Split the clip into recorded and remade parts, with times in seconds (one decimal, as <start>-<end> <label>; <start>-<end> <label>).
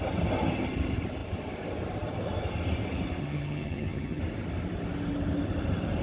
0.0-3.2 recorded; 3.2-4.2 remade; 4.2-6.0 recorded